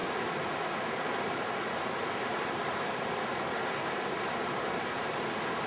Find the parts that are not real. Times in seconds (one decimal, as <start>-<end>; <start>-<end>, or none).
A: 2.3-5.1